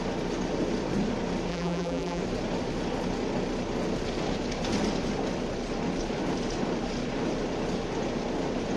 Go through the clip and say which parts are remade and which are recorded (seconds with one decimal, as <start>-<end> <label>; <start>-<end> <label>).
0.0-1.5 recorded; 1.5-2.2 remade; 2.2-8.8 recorded

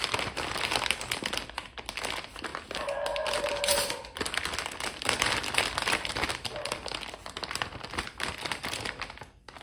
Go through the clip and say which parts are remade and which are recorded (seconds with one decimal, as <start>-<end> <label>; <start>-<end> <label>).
0.0-9.6 recorded